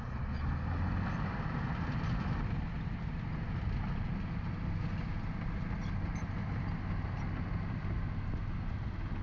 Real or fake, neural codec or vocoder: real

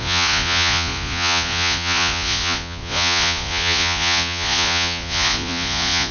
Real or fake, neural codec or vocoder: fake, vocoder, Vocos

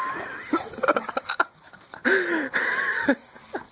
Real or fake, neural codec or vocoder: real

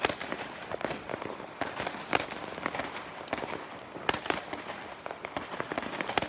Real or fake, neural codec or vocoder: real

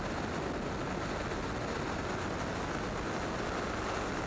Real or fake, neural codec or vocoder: real